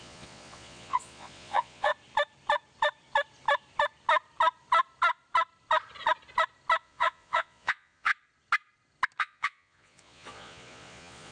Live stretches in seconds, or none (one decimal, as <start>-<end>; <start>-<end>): 1.9-6.8; 8.1-9.2